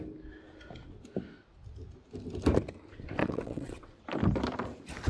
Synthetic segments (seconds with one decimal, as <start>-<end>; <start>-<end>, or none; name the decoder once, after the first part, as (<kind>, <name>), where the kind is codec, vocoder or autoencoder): 3.2-4.0 (vocoder, WaveNeXt)